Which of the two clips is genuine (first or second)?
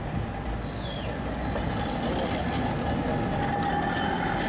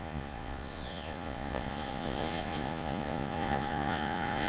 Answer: first